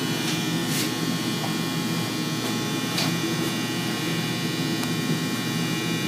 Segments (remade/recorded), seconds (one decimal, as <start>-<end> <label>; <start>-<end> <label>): 0.0-6.1 recorded